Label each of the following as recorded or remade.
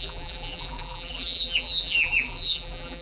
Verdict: remade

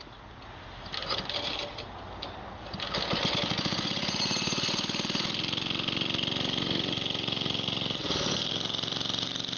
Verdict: recorded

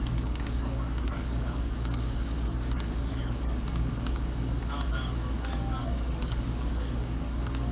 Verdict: remade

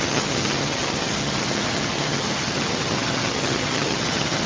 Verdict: remade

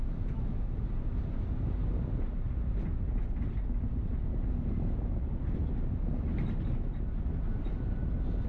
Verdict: recorded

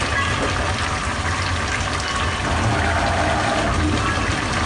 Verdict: recorded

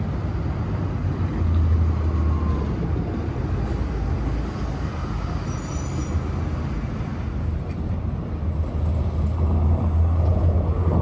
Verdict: recorded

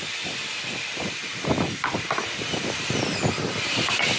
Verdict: recorded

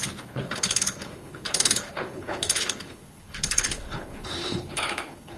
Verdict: remade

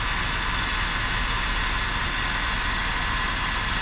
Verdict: recorded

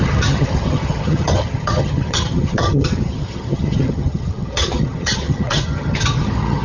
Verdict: remade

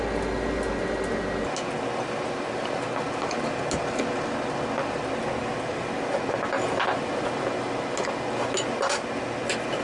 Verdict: recorded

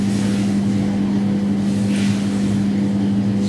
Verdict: recorded